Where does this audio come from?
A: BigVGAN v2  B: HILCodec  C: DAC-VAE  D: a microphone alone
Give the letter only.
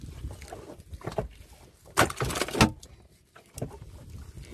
D